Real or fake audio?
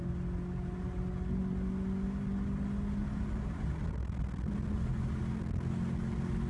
real